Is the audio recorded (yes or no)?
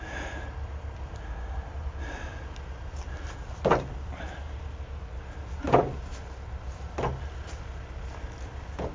yes